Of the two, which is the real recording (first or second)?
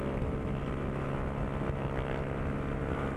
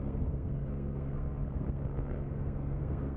first